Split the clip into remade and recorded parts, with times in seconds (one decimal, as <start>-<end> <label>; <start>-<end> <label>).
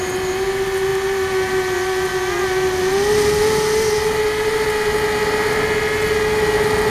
0.0-6.9 recorded